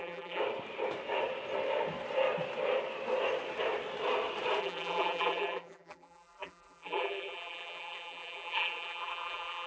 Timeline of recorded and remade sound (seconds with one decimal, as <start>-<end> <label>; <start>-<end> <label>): 0.0-0.4 remade; 0.4-4.6 recorded; 4.6-9.7 remade